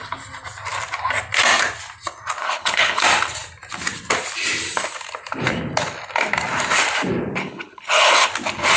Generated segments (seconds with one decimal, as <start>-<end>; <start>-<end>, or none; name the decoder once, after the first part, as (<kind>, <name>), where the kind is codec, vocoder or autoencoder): 2.4-3.0 (codec, HILCodec); 7.4-8.3